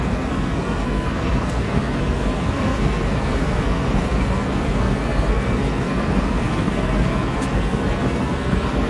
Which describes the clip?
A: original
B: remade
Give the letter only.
B